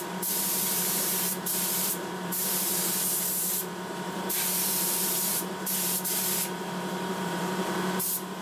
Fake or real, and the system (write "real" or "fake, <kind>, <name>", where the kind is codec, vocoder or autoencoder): fake, vocoder, BigVGAN v2